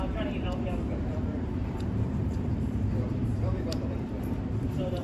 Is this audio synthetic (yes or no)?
yes